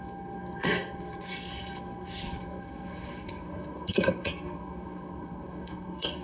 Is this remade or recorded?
remade